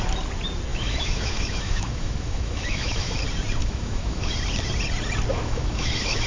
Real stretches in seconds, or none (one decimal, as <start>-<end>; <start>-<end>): 0.0-0.7; 3.2-3.6; 4.2-5.3

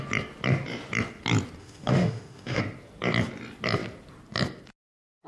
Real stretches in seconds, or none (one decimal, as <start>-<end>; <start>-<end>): 0.0-1.6; 2.6-5.3